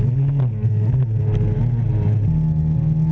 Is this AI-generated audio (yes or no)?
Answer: no